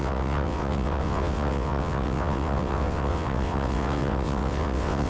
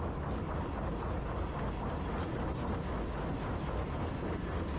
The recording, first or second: second